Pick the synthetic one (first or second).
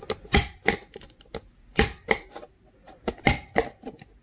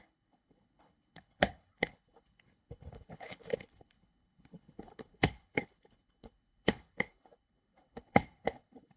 second